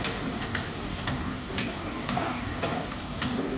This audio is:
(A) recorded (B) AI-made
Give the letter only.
B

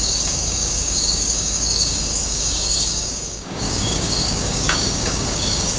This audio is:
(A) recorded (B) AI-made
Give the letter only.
B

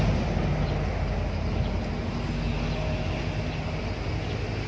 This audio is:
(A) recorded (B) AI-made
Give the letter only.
A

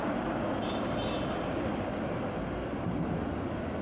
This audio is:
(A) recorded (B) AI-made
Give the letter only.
A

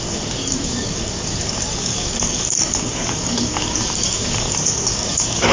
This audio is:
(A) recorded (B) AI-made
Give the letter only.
B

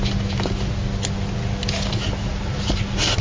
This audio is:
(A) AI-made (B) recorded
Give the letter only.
B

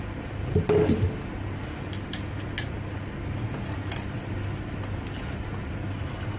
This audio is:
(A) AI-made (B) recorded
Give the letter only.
B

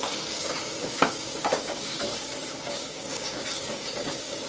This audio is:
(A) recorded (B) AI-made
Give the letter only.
B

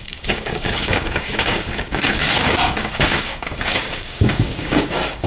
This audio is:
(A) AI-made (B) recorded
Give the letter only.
A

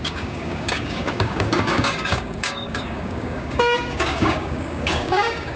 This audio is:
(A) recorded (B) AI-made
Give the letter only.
B